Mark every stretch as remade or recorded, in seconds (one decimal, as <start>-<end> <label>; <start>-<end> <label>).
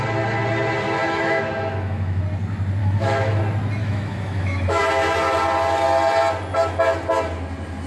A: 0.0-1.0 recorded; 1.0-2.2 remade; 2.2-2.8 recorded; 2.8-3.4 remade; 3.4-3.8 recorded; 3.8-4.8 remade; 4.8-7.9 recorded